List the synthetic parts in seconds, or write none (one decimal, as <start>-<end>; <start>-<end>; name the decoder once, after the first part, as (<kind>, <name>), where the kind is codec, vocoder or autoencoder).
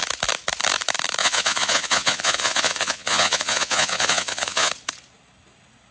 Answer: 1.2-4.7 (vocoder, Vocos)